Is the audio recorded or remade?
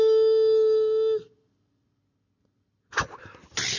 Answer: recorded